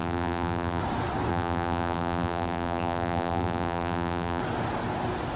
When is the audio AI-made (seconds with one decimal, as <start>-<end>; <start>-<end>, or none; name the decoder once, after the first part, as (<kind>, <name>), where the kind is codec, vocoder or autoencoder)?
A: 0.0-0.8 (vocoder, BigVGAN v2); 1.3-4.4